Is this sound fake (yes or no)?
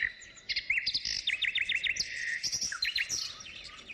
no